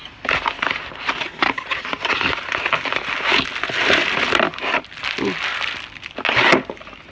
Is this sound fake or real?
real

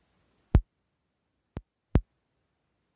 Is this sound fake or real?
real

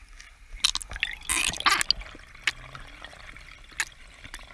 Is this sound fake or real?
real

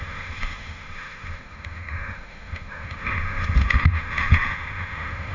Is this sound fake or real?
fake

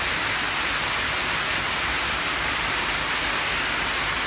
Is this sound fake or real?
real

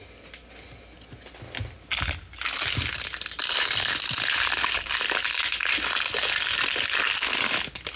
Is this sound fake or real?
real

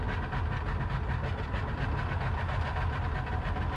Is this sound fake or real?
real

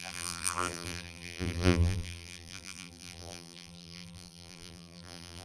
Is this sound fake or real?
fake